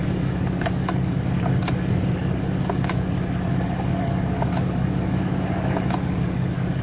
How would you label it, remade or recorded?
remade